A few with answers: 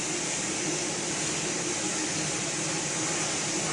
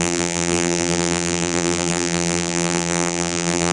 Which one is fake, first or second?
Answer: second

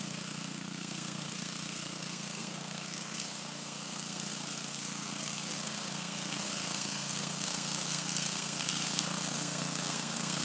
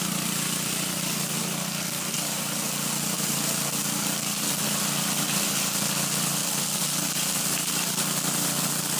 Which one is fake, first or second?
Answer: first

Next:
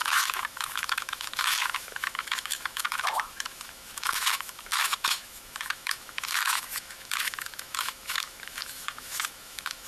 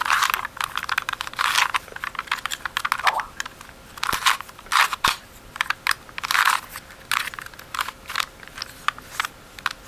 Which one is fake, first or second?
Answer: first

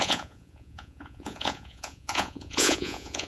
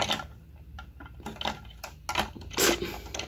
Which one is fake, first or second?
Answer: first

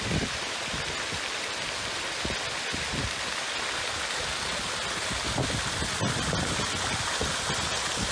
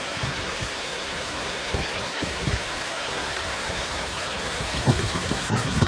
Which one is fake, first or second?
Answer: second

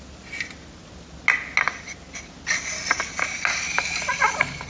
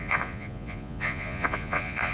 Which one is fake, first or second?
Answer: second